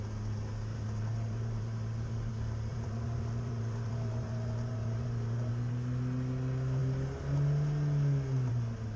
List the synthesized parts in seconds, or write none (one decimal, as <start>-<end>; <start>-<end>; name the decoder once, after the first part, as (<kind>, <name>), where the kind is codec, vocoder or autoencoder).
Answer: 0.7-2.3 (vocoder, BigVGAN v2); 2.7-5.5